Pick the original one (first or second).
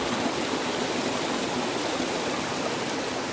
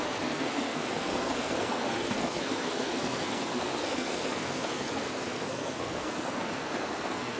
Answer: first